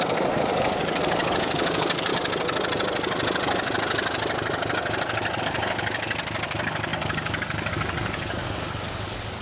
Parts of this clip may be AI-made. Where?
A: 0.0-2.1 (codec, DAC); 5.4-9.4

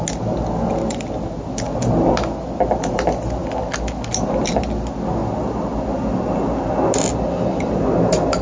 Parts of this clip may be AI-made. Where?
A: none

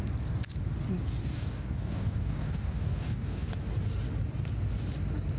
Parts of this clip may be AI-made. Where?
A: 1.2-3.5 (codec, DAC)

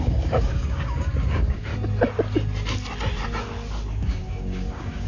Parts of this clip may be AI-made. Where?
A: 0.0-1.7 (codec, DAC); 4.0-5.1

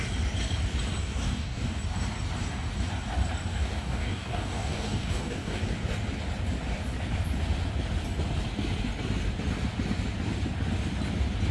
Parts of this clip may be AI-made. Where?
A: 1.0-1.8 (codec, DAC); 3.5-5.6

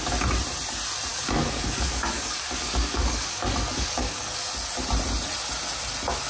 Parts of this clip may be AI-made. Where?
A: 1.1-4.5 (codec, DAC)